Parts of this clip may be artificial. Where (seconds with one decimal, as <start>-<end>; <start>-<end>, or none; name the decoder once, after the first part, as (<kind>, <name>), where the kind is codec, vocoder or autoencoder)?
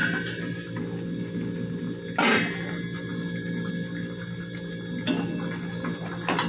none